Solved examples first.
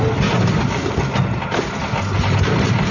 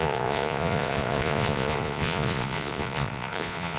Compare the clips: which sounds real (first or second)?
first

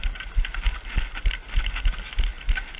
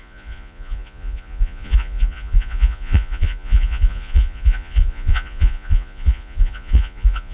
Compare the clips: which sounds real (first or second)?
first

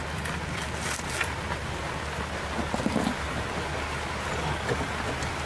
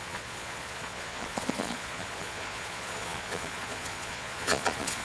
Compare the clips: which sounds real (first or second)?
first